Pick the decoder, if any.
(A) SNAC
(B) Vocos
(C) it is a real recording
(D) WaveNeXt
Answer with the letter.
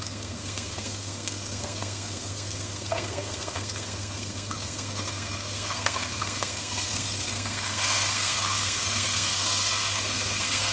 A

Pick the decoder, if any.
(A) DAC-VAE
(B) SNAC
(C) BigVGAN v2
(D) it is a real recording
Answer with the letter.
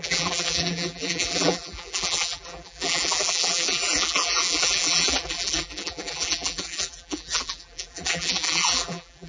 C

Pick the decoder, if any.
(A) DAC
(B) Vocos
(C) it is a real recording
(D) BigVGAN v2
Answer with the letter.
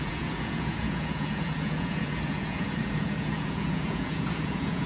B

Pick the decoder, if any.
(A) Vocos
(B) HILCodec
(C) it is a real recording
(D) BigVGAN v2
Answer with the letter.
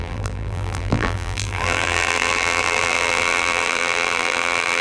D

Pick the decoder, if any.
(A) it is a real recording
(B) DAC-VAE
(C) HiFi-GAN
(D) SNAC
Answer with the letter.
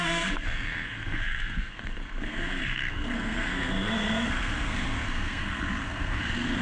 D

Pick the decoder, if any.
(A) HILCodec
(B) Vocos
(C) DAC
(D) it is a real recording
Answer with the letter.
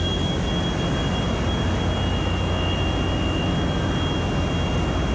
D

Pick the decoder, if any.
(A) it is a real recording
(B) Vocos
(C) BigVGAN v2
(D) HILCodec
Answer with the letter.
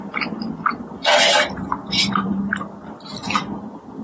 C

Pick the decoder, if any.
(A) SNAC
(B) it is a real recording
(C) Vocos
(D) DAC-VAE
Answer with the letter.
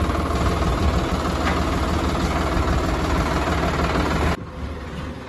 B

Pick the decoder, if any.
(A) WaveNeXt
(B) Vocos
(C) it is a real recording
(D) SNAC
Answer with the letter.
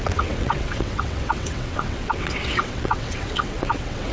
A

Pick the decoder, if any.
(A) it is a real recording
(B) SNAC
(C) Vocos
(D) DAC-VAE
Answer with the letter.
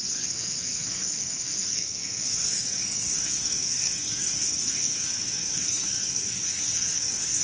B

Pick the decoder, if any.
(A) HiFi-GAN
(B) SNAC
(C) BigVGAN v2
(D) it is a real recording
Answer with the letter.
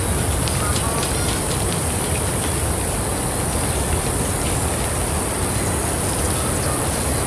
D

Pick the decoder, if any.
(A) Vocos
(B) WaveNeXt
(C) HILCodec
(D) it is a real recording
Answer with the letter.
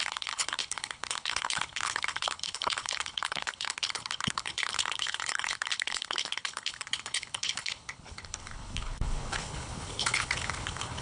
C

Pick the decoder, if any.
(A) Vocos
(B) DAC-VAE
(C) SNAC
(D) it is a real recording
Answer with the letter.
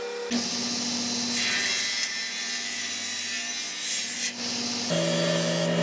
D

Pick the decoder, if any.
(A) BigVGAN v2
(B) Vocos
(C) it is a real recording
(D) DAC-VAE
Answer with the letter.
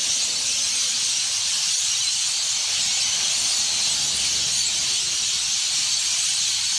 C